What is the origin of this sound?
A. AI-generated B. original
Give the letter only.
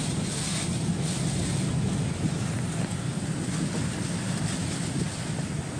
B